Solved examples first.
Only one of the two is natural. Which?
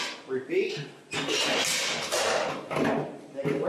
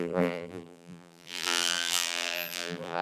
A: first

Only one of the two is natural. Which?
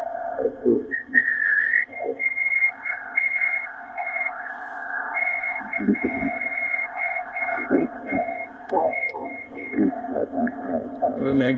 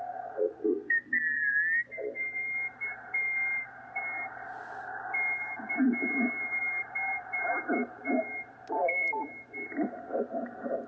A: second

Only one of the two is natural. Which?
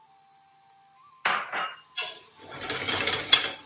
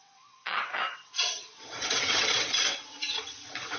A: first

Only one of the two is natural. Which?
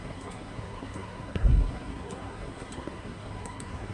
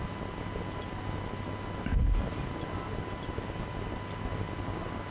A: second